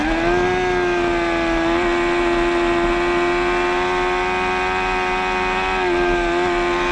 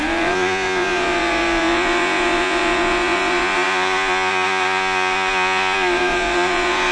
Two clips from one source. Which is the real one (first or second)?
first